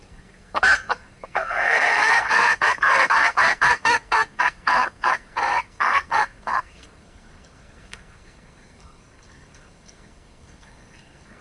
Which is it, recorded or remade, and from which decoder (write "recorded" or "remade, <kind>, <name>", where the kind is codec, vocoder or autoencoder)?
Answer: remade, codec, SNAC